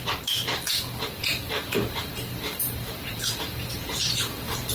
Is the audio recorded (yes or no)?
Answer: no